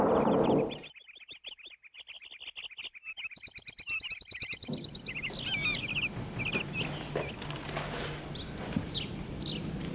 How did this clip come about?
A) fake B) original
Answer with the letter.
B